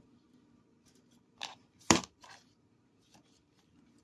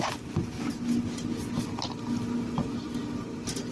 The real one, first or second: second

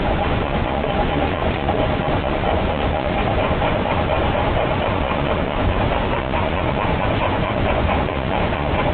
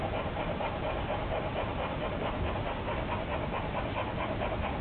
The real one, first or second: second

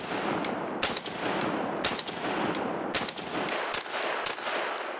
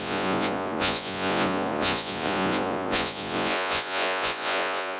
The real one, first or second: first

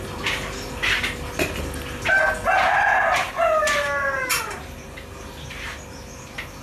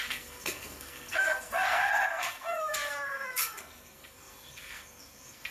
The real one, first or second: first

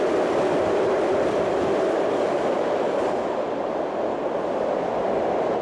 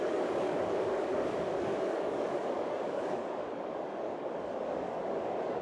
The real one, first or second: first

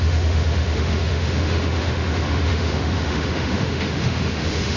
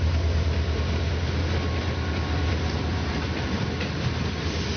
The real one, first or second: second